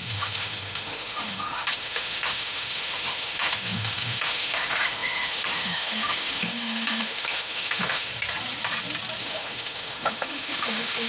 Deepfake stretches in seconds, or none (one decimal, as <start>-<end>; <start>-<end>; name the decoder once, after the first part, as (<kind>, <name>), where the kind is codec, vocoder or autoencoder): 0.0-8.1 (autoencoder, DAC-VAE); 9.2-11.1